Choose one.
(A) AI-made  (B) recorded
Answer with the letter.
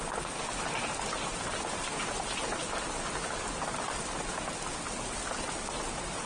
B